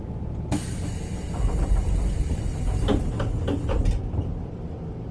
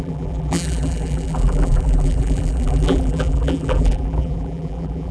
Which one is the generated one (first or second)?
second